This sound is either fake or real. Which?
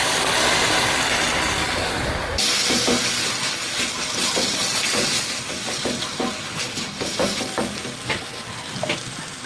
real